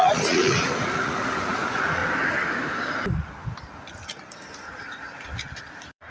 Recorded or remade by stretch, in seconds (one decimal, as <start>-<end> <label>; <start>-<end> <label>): 0.0-2.0 remade; 2.0-5.6 recorded; 5.6-6.1 remade